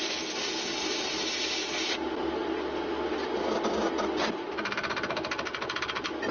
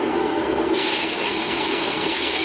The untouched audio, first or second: first